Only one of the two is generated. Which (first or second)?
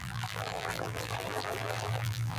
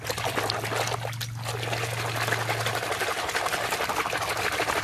first